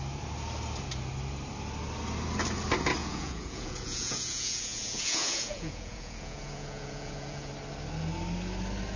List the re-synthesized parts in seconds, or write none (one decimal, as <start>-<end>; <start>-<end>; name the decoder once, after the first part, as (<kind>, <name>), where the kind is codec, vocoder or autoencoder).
3.0-7.5 (vocoder, Vocos)